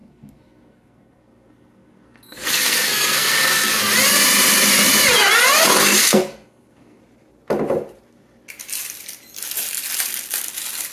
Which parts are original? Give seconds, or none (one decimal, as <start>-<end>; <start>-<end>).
3.8-6.0; 7.0-10.9